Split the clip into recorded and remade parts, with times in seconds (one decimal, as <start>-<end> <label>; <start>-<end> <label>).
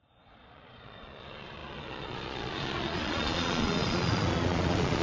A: 0.0-5.0 remade